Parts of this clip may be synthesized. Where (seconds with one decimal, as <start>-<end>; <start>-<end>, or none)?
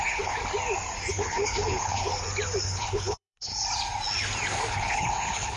0.0-0.4; 1.1-2.1; 2.6-3.5; 4.7-5.6